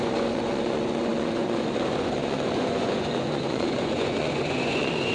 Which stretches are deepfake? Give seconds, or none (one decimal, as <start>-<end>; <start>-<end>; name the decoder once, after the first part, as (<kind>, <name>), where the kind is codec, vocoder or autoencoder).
0.0-5.1 (vocoder, Vocos)